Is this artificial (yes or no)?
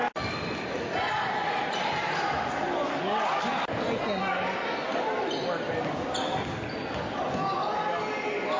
no